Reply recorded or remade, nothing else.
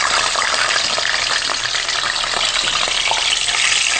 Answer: recorded